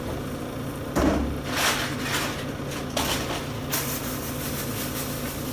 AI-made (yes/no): no